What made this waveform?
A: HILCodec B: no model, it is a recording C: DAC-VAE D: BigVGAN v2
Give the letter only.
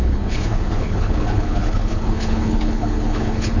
A